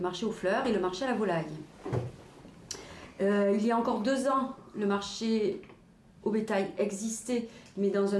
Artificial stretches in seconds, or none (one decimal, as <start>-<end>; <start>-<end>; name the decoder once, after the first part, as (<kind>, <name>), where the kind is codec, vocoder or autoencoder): none